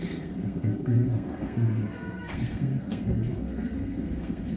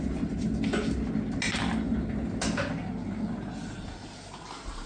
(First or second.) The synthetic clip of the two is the first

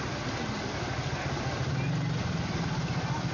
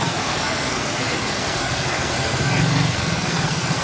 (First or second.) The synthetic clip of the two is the second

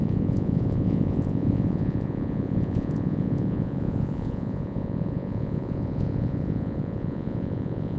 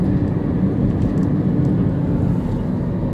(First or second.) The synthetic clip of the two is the first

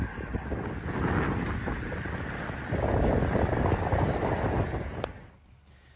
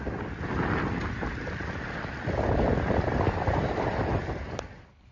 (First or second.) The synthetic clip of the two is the second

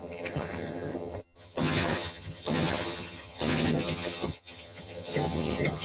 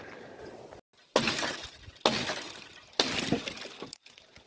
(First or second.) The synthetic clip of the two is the first